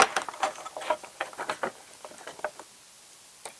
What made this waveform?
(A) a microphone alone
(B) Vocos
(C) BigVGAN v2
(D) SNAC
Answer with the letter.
A